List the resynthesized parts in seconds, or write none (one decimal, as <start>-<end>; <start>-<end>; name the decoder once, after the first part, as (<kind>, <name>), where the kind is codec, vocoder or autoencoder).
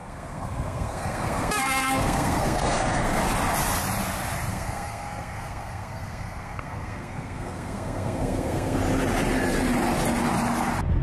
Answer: 0.0-3.2 (codec, SNAC); 4.5-8.8